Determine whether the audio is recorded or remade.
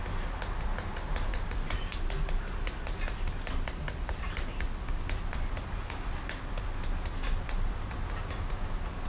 recorded